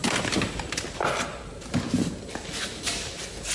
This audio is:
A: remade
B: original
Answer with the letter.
B